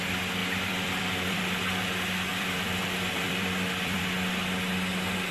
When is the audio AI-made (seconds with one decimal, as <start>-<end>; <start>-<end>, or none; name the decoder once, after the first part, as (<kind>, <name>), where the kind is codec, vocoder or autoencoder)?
0.4-1.5 (vocoder, BigVGAN v2); 2.3-4.0